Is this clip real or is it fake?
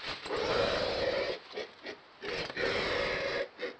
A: real